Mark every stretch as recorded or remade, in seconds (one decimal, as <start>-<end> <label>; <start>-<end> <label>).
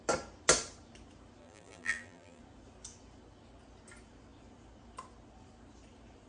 0.0-1.4 recorded; 1.4-2.4 remade; 2.4-6.3 recorded